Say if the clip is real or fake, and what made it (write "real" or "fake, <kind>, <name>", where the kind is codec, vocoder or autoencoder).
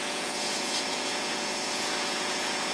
fake, vocoder, Vocos